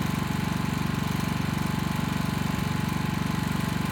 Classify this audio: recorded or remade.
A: recorded